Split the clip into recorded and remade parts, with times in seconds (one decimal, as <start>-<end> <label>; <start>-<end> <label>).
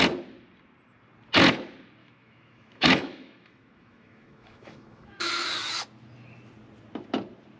0.0-2.0 recorded; 2.0-5.3 remade; 5.3-7.6 recorded